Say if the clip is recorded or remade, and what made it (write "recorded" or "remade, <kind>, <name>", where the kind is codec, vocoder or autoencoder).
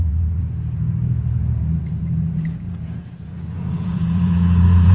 remade, vocoder, Vocos